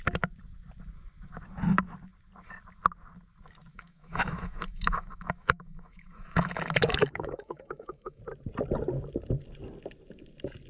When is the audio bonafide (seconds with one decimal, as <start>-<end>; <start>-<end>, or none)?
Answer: 0.0-3.7; 8.2-10.7